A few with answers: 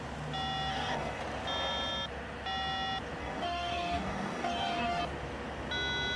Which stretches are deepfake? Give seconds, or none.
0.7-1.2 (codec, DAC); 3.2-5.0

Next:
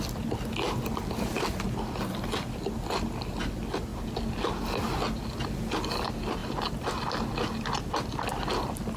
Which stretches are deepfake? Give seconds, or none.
none

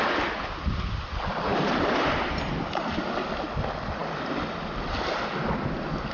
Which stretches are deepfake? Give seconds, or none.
none